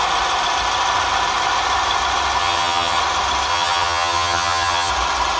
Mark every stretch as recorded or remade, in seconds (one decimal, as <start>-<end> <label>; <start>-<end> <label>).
0.0-2.4 recorded; 2.4-3.0 remade; 3.0-3.5 recorded; 3.5-4.9 remade; 4.9-5.4 recorded